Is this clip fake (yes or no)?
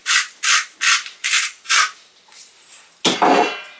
no